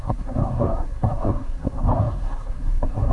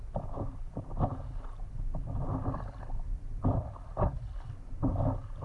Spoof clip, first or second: first